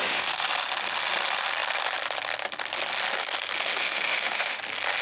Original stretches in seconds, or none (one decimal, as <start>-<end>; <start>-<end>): 0.5-3.8; 4.6-5.0